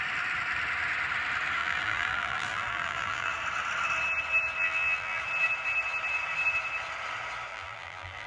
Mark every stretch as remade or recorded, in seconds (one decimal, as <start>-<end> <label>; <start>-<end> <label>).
0.0-1.6 recorded; 1.6-3.3 remade; 3.3-4.6 recorded; 4.6-5.2 remade; 5.2-7.5 recorded; 7.5-8.3 remade